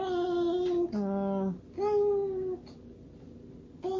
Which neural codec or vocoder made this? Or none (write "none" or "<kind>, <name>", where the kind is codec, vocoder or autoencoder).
none